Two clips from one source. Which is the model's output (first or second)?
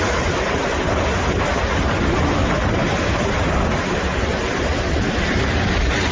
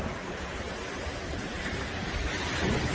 second